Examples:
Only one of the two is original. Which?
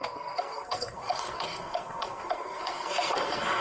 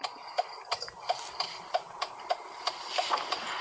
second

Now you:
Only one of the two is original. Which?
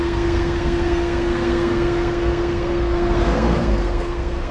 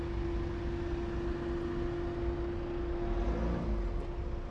second